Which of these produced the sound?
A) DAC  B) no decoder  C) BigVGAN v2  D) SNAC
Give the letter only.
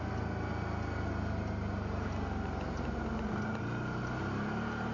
B